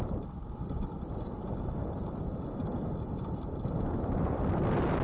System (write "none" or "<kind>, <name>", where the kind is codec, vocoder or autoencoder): none